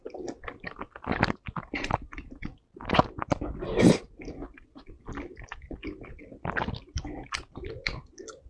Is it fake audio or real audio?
real